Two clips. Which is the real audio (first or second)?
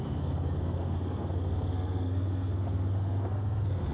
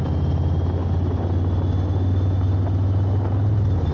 second